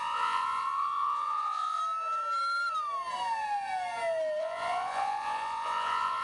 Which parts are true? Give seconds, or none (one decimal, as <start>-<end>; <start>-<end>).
1.8-4.4